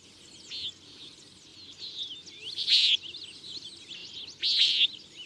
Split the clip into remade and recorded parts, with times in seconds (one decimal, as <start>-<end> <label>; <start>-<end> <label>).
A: 0.0-5.3 recorded